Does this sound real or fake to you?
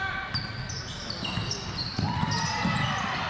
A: real